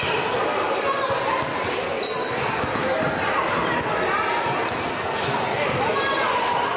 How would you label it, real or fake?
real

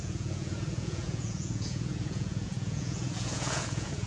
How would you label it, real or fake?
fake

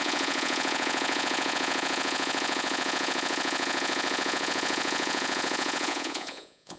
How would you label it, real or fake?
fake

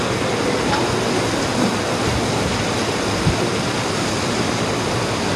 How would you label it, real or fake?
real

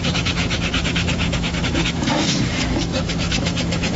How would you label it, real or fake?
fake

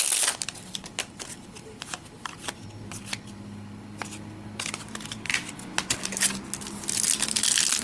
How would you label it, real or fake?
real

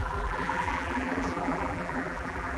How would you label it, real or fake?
fake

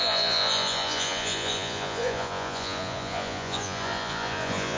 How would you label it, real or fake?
fake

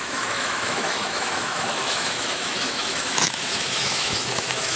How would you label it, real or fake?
fake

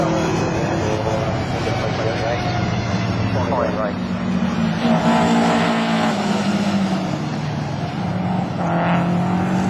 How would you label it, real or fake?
real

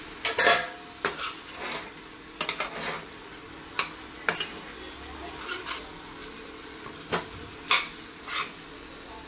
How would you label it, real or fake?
real